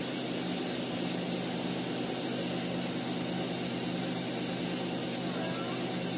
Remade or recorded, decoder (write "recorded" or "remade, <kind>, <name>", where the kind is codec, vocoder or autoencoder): recorded